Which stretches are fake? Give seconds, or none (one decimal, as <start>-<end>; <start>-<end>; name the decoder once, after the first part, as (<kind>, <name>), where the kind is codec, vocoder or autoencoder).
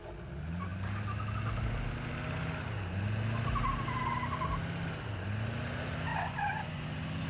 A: 6.1-6.8 (vocoder, Vocos)